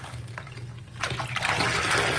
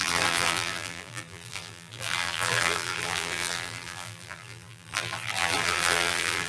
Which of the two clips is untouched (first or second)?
first